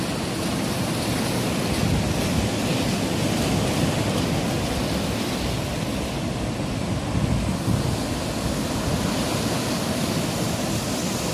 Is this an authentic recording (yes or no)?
yes